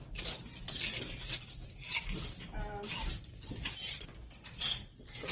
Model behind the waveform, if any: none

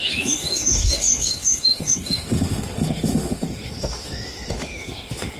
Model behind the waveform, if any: autoencoder, DAC-VAE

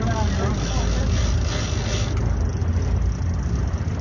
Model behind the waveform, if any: none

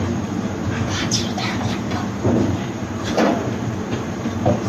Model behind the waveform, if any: vocoder, BigVGAN v2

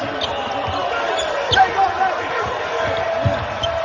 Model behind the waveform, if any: vocoder, BigVGAN v2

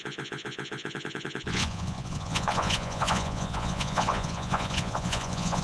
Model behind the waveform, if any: vocoder, Vocos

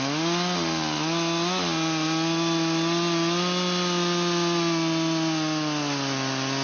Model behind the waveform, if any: none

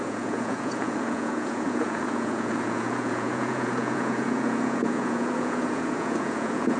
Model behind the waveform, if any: vocoder, Vocos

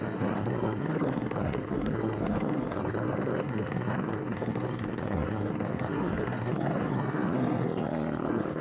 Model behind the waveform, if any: codec, SNAC